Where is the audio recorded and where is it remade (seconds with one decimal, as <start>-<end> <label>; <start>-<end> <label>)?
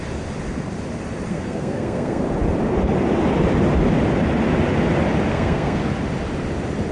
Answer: 0.0-1.3 recorded; 1.3-2.2 remade; 2.2-5.3 recorded; 5.3-5.8 remade; 5.8-6.9 recorded